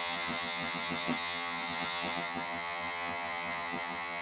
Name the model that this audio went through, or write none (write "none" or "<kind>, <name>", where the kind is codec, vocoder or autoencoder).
vocoder, HiFi-GAN